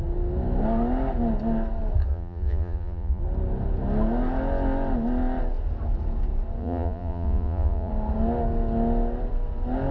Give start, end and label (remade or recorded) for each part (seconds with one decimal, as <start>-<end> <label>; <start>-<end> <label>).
0.0-2.1 recorded; 2.1-3.2 remade; 3.2-6.6 recorded; 6.6-7.9 remade; 7.9-9.9 recorded